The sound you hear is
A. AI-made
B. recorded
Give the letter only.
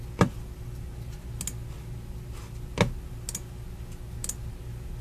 B